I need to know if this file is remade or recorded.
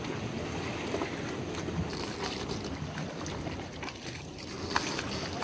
recorded